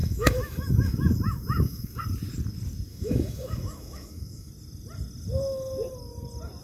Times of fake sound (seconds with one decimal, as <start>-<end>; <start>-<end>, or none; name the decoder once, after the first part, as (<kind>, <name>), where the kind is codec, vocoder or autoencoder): 0.0-2.0 (autoencoder, DAC-VAE); 2.9-4.5